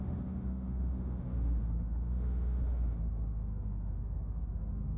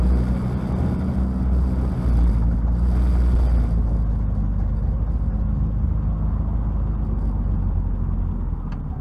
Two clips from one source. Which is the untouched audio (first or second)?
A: second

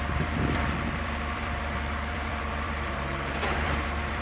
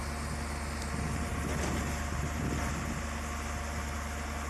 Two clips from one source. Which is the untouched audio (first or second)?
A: second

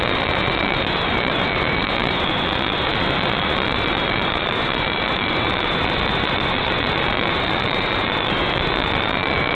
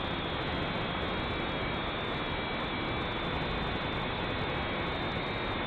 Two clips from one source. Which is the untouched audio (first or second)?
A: second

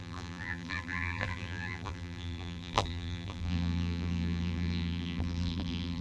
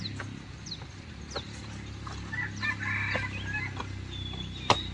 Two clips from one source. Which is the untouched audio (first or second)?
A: second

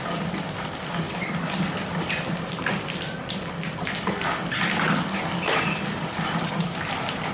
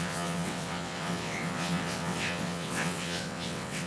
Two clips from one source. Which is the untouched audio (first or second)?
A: first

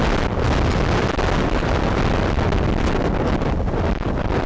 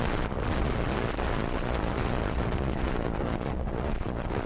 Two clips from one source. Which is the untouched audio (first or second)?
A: first